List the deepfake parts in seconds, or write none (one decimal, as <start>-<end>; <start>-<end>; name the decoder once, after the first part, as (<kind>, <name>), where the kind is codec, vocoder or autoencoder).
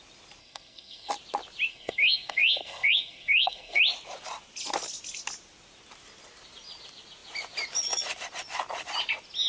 0.4-1.1 (codec, SNAC); 1.7-3.8